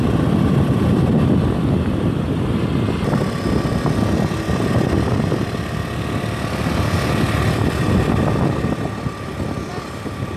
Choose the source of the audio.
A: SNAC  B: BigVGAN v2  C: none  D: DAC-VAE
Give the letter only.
C